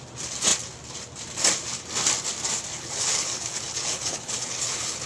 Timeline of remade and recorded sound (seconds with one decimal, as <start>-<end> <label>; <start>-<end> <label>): 0.0-2.7 recorded; 2.7-5.1 remade